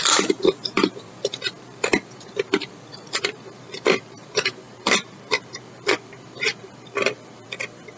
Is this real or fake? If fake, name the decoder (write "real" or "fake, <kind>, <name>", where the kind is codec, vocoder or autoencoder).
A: fake, vocoder, BigVGAN v2